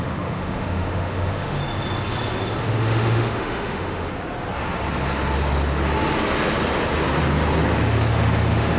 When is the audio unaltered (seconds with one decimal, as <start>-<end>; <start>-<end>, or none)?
1.6-2.6; 4.1-8.1